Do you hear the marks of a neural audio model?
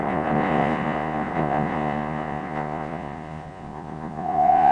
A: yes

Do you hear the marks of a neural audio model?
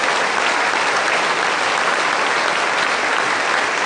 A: no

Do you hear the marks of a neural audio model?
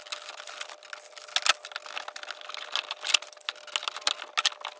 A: no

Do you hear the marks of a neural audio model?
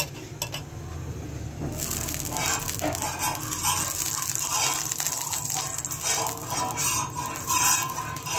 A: no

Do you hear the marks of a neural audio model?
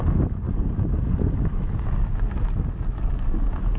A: no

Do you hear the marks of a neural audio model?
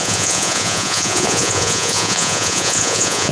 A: yes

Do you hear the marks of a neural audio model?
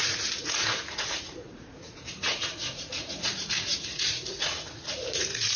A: yes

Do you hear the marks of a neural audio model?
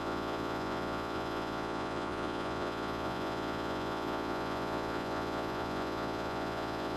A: yes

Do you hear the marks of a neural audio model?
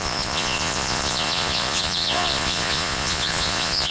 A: yes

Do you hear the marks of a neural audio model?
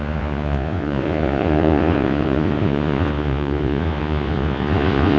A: yes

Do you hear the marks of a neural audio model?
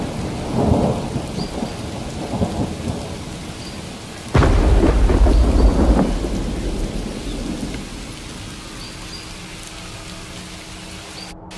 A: no